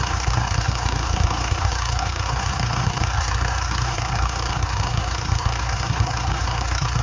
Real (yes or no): no